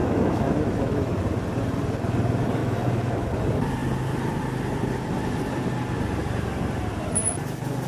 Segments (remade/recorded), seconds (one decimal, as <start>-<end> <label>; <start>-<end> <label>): 0.0-1.2 remade; 1.2-2.6 recorded; 2.6-3.3 remade; 3.3-7.9 recorded